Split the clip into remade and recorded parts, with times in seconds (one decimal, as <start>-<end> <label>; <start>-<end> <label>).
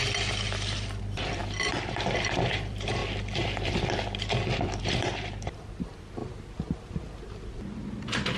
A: 0.0-1.0 recorded; 1.0-3.0 remade; 3.0-4.8 recorded; 4.8-6.2 remade; 6.2-8.4 recorded